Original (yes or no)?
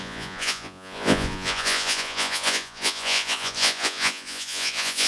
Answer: no